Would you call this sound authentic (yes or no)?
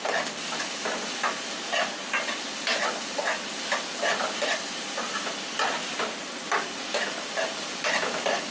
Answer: yes